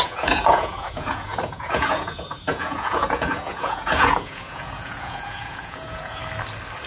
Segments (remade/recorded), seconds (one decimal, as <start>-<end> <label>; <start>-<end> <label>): 0.0-6.2 remade; 6.2-6.9 recorded